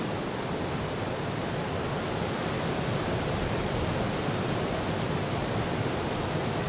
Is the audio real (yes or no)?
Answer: yes